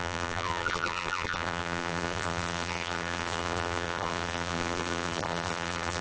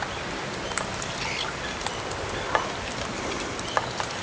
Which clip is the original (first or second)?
second